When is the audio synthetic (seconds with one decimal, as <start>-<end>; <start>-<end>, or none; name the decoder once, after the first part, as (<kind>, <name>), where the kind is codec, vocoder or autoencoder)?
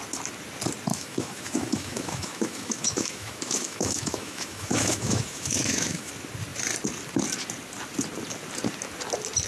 0.9-6.1 (autoencoder, DAC-VAE)